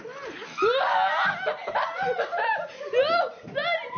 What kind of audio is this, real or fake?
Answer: real